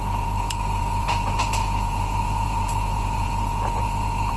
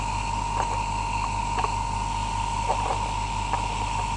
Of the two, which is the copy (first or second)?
first